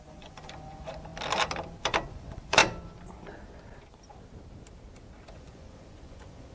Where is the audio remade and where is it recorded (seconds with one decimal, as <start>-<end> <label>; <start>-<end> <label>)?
0.0-1.1 remade; 1.1-2.1 recorded; 2.1-2.6 remade; 2.6-5.3 recorded; 5.3-6.5 remade